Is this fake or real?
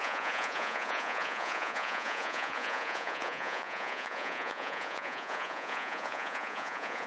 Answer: fake